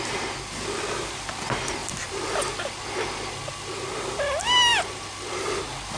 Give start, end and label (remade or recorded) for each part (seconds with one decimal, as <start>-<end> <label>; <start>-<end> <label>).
0.0-6.0 recorded